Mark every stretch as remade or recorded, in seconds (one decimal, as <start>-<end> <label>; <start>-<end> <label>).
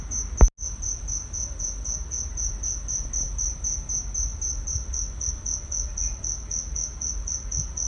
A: 0.0-7.9 recorded